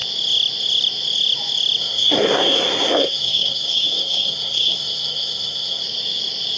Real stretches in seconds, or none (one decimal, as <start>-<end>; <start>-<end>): 0.0-1.8; 5.8-6.6